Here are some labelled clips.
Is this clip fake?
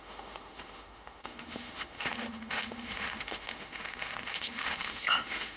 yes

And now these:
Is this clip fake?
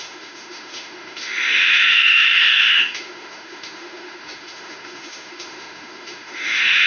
yes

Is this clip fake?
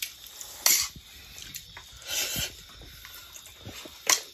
no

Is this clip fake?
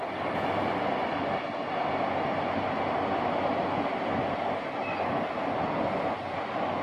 no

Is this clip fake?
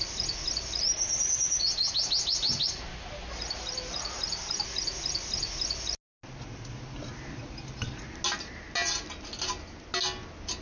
no